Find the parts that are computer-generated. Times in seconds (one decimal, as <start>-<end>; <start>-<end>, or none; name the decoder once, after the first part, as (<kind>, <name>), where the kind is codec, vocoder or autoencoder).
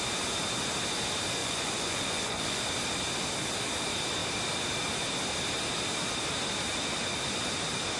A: 1.4-2.6 (vocoder, Vocos)